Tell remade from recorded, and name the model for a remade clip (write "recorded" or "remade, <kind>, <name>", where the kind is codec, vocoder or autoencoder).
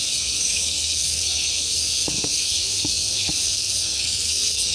remade, codec, SNAC